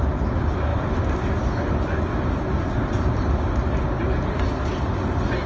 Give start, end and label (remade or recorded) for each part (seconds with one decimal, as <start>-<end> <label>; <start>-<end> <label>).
0.0-5.5 recorded